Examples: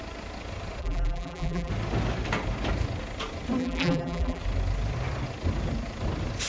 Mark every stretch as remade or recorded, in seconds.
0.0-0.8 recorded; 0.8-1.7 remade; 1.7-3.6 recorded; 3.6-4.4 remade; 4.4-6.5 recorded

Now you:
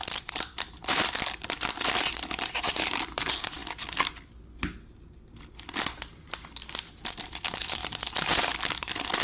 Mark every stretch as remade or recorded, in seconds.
0.0-3.6 remade; 3.6-7.0 recorded; 7.0-7.8 remade; 7.8-8.7 recorded; 8.7-9.2 remade

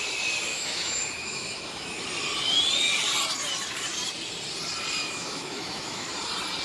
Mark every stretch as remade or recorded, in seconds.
0.0-0.5 recorded; 0.5-2.0 remade; 2.0-5.0 recorded; 5.0-6.1 remade; 6.1-6.6 recorded

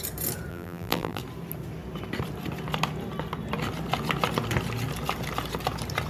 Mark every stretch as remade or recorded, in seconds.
0.0-0.5 recorded; 0.5-1.2 remade; 1.2-6.1 recorded

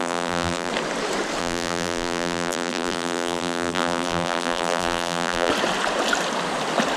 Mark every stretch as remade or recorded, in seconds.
0.0-0.7 remade; 0.7-1.4 recorded; 1.4-5.5 remade; 5.5-7.0 recorded

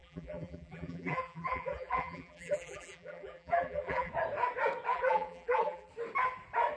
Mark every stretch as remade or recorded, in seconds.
0.0-4.1 remade; 4.1-4.9 recorded; 4.9-5.9 remade; 5.9-6.8 recorded

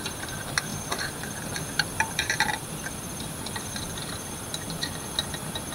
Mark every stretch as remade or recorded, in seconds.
0.0-0.7 recorded; 0.7-4.1 remade; 4.1-5.7 recorded

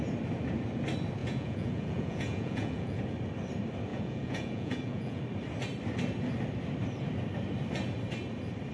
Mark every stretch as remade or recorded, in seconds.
0.0-1.2 recorded; 1.2-3.0 remade; 3.0-3.9 recorded; 3.9-5.2 remade; 5.2-8.7 recorded